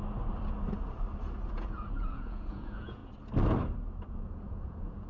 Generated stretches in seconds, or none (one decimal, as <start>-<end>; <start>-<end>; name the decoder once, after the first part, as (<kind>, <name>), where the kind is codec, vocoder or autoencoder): 1.5-3.0 (vocoder, Vocos); 4.1-5.1